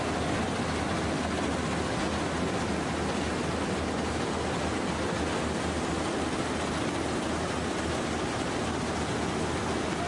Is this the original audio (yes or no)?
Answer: yes